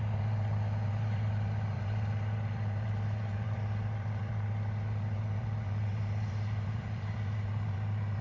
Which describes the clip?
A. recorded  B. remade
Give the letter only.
B